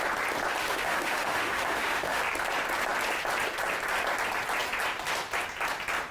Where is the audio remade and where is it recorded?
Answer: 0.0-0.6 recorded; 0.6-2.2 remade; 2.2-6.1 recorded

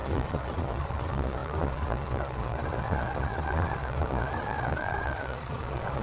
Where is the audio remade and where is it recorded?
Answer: 0.0-6.0 remade

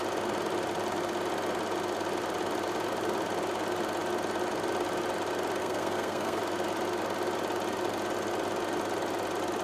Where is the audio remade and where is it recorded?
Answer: 0.0-5.6 recorded; 5.6-6.4 remade; 6.4-9.6 recorded